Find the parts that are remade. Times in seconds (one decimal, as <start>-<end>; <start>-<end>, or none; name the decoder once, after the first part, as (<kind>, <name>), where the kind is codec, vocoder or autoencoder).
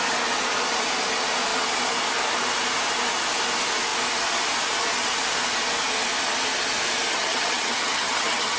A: 7.1-8.6 (vocoder, HiFi-GAN)